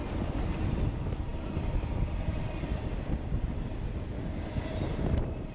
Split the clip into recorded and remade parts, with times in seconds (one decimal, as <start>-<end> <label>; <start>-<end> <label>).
0.0-5.5 recorded